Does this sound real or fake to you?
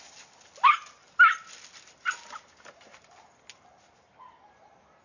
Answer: real